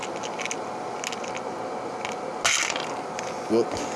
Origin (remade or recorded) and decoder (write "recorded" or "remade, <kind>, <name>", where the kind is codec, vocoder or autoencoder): recorded